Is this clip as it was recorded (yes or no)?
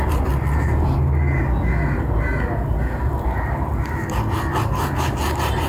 yes